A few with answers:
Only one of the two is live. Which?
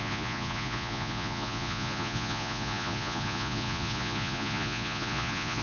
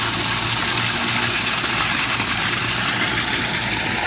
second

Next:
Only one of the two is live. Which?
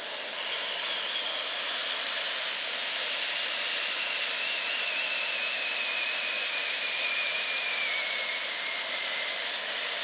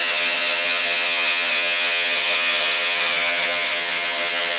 first